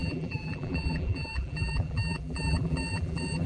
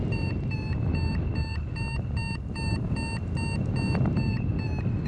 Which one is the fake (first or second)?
first